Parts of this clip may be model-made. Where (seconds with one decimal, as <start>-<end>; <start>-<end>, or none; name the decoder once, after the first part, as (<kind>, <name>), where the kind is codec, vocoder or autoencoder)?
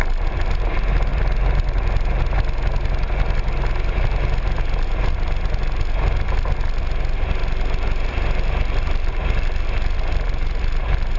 1.1-2.2 (vocoder, BigVGAN v2); 7.4-11.2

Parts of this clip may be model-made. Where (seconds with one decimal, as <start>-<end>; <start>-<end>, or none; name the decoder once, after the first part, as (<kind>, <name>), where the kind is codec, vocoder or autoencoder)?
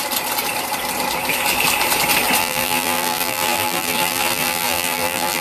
2.4-5.4 (vocoder, BigVGAN v2)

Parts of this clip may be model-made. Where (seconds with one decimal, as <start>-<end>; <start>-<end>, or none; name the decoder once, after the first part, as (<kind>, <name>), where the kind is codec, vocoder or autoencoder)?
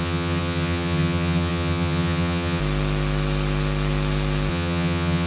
0.0-2.6 (vocoder, HiFi-GAN); 4.5-5.3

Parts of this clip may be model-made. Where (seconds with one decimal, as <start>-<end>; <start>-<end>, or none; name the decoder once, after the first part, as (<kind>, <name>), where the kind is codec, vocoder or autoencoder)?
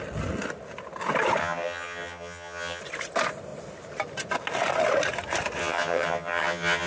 1.4-2.8 (vocoder, HiFi-GAN); 5.6-6.9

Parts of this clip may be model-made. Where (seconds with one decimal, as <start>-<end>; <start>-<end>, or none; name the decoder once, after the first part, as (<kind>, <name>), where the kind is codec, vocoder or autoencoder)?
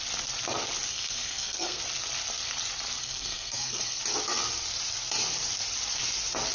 0.9-1.8 (codec, SNAC); 3.0-4.0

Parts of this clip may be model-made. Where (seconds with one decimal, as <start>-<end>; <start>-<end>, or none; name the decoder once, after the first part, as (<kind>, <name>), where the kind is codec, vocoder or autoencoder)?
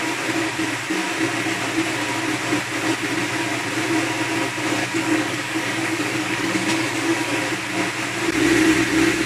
4.8-7.4 (codec, DAC)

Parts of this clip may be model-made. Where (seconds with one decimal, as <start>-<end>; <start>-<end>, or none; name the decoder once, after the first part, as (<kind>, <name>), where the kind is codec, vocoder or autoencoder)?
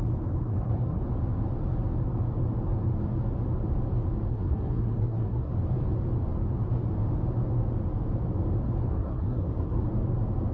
0.4-1.0 (codec, SNAC); 4.3-5.5; 8.9-9.8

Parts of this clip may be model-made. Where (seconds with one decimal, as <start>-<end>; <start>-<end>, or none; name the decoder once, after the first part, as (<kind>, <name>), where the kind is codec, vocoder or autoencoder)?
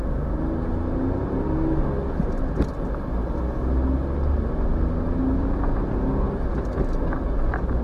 none